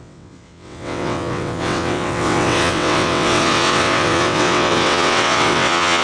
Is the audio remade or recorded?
remade